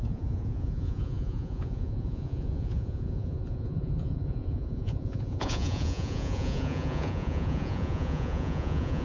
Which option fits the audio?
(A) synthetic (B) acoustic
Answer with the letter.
A